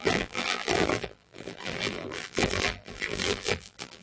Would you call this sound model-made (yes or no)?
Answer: yes